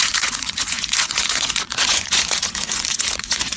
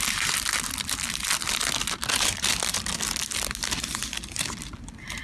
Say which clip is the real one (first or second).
second